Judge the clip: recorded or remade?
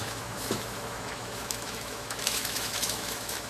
remade